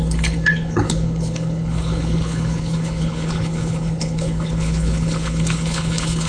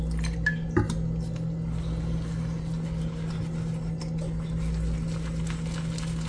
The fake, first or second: first